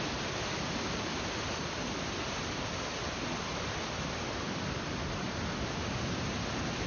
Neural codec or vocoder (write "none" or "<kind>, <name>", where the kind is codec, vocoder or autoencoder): none